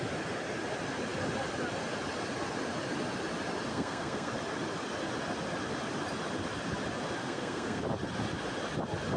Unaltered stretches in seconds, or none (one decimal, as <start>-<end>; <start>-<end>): 0.0-3.7; 4.3-7.2; 7.8-9.2